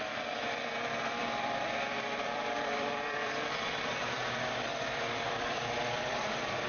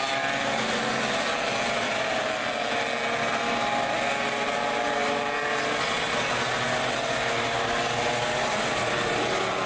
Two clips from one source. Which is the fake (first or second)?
first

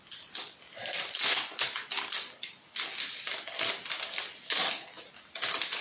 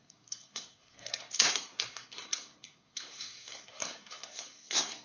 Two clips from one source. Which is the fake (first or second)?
second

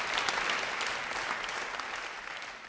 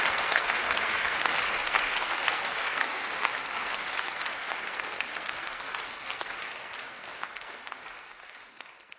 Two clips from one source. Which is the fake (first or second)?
second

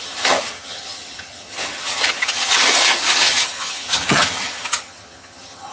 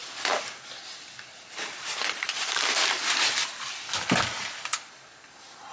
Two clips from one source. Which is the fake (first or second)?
first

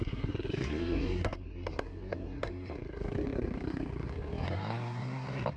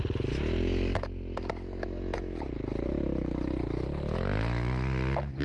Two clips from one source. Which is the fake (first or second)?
first